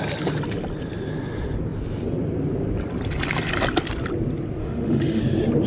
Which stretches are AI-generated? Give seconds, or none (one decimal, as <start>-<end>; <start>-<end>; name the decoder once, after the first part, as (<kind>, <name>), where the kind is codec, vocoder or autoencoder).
4.6-5.2 (autoencoder, DAC-VAE)